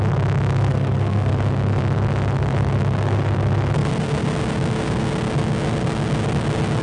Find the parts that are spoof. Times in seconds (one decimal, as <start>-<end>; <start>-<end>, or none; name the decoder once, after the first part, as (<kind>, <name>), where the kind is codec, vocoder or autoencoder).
0.7-1.3 (codec, SNAC)